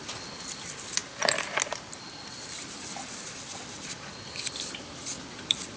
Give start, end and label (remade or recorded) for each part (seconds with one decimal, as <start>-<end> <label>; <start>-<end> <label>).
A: 0.0-5.8 recorded